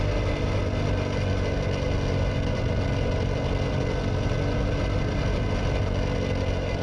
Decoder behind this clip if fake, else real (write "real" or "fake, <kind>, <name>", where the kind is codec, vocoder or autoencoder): real